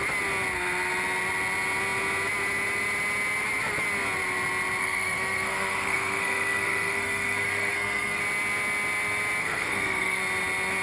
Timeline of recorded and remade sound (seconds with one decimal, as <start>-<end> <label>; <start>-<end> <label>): 0.0-4.8 recorded; 4.8-8.2 remade; 8.2-9.4 recorded; 9.4-10.2 remade; 10.2-10.8 recorded